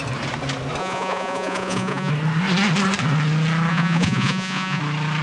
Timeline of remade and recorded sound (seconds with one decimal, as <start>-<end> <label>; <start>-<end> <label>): 0.0-0.8 recorded; 0.8-2.1 remade; 2.1-3.7 recorded; 3.7-4.8 remade; 4.8-5.2 recorded